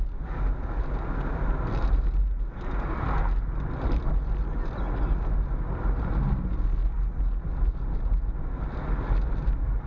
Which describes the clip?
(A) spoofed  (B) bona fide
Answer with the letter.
B